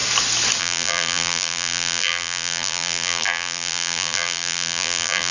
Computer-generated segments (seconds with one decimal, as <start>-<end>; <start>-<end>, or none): 0.6-5.3